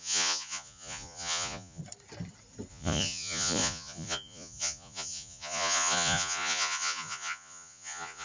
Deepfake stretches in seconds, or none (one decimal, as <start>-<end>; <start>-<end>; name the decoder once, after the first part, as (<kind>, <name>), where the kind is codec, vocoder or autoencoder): 0.0-1.8 (vocoder, Vocos); 2.7-8.2